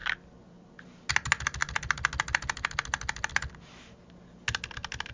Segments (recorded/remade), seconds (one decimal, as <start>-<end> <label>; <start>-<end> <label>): 0.0-5.1 recorded